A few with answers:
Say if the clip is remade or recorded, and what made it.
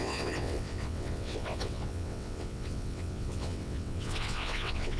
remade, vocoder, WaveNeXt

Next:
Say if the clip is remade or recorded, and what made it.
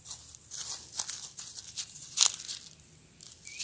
recorded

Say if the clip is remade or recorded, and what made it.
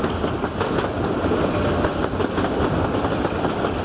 recorded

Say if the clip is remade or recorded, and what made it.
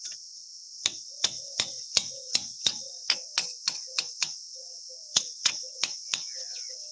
remade, vocoder, WaveNeXt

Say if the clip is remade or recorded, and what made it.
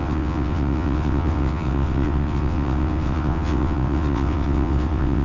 remade, vocoder, WaveNeXt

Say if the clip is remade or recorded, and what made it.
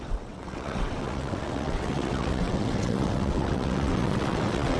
remade, vocoder, WaveNeXt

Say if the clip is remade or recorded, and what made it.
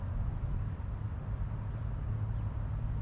recorded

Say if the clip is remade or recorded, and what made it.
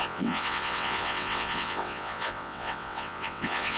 remade, vocoder, WaveNeXt